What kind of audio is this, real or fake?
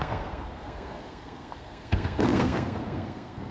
fake